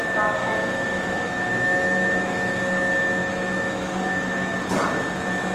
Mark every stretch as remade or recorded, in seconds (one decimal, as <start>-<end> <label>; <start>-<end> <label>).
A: 0.0-0.4 recorded; 0.4-2.6 remade; 2.6-3.2 recorded; 3.2-4.6 remade; 4.6-5.5 recorded